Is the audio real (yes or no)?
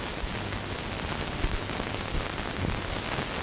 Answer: yes